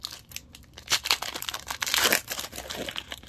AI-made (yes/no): no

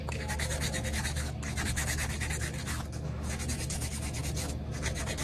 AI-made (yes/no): yes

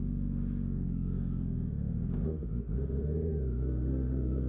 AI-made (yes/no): yes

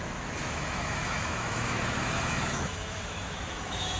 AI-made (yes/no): yes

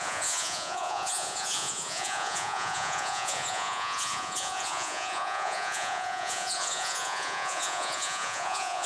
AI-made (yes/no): yes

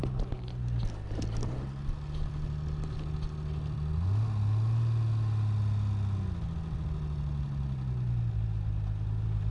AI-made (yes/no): no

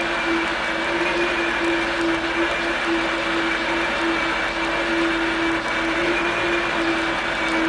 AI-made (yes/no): no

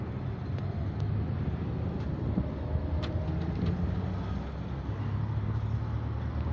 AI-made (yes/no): no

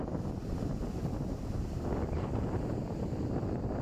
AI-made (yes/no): no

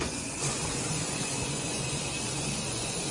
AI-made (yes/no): yes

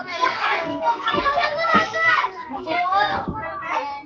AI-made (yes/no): yes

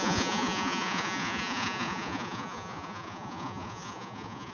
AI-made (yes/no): yes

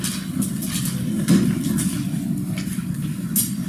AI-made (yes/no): no